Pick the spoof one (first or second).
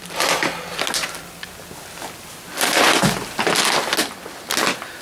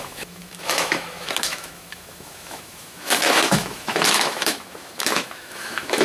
second